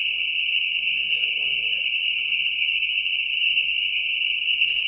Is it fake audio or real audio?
real